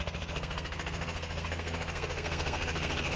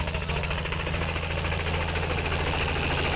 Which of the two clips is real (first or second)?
second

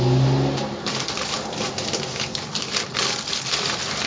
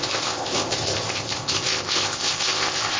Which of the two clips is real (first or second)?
first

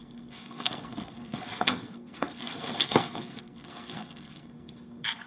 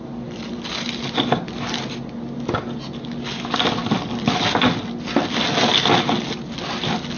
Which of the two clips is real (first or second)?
second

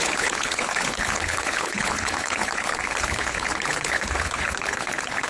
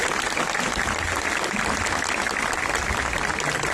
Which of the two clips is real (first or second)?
second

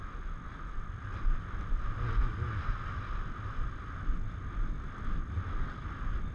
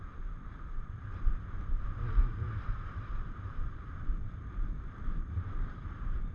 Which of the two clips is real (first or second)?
first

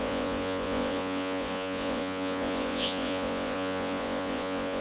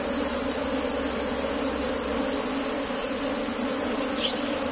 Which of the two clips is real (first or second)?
second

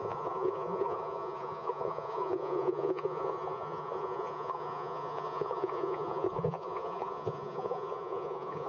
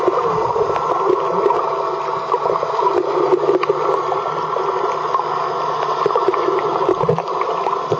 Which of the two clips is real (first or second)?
second